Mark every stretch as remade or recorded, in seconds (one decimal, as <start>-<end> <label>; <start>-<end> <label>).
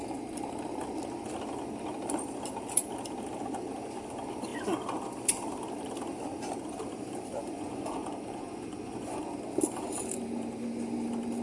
0.0-7.3 recorded; 7.3-9.2 remade; 9.2-11.4 recorded